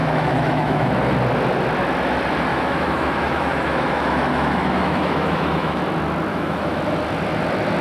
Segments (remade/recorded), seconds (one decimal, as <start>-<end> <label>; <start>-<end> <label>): 0.0-0.9 remade; 0.9-2.5 recorded; 2.5-5.8 remade; 5.8-6.3 recorded; 6.3-6.8 remade; 6.8-7.8 recorded